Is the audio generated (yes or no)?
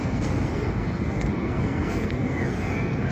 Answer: yes